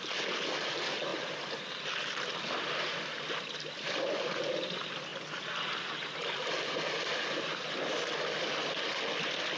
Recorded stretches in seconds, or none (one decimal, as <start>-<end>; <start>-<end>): 0.0-9.6